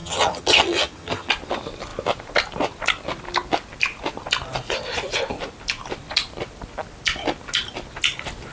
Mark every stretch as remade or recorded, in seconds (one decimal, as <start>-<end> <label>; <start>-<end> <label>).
0.0-1.3 remade; 1.3-8.5 recorded